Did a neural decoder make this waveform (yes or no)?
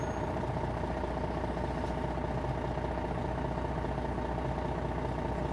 no